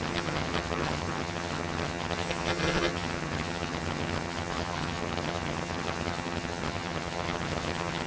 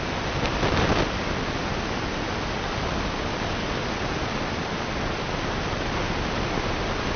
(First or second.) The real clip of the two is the second